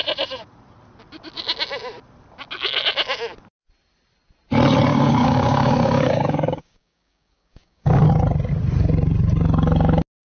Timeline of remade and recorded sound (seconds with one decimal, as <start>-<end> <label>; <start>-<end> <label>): 0.0-4.9 recorded; 4.9-8.0 remade; 8.0-10.2 recorded